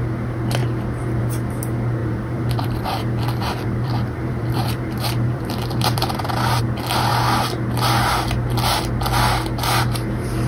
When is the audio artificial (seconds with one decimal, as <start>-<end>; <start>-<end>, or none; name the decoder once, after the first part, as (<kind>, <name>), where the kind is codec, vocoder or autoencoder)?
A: 2.0-6.6 (vocoder, BigVGAN v2)